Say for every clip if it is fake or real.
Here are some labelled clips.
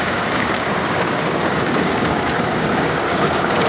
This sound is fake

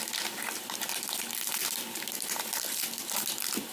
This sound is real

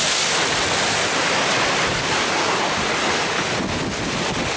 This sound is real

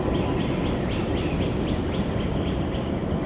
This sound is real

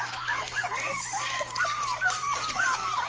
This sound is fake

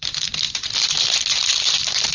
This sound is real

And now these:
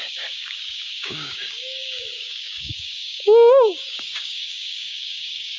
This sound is fake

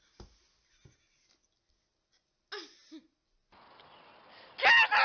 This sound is real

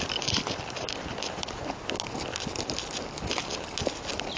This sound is real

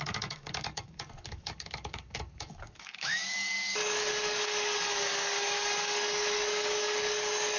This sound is fake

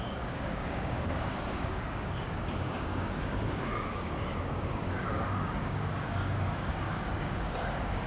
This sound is fake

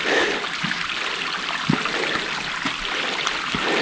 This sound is real